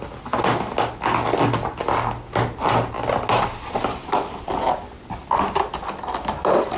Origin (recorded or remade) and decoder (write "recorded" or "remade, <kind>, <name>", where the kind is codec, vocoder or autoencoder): recorded